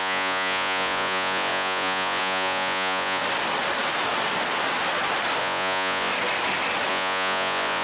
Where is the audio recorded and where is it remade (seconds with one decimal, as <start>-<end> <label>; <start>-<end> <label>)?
0.0-3.2 remade; 3.2-5.4 recorded; 5.4-6.1 remade; 6.1-6.9 recorded; 6.9-7.8 remade